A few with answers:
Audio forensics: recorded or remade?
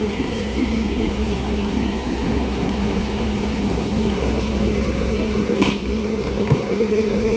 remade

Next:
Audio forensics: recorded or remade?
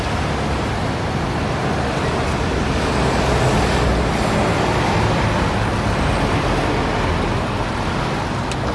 recorded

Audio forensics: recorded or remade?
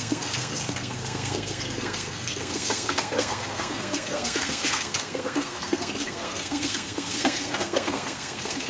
remade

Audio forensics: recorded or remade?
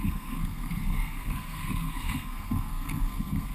remade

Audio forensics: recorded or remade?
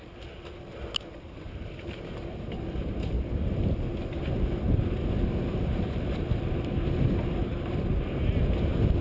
recorded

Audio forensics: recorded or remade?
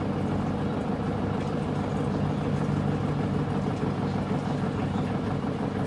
recorded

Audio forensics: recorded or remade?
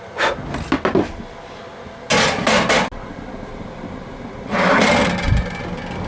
recorded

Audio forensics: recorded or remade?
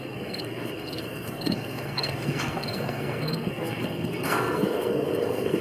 remade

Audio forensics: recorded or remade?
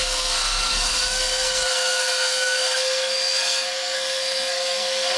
remade